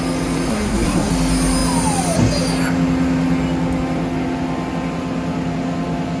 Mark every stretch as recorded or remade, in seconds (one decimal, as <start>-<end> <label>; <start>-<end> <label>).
0.0-0.5 recorded; 0.5-1.1 remade; 1.1-6.2 recorded